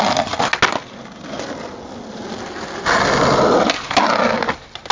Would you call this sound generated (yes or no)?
no